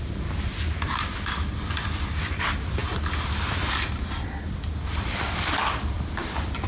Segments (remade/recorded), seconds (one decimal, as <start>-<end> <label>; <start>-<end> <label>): 0.0-6.7 recorded